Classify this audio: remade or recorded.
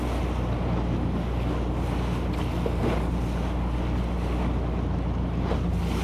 recorded